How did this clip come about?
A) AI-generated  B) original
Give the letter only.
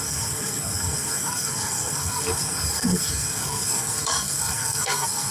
A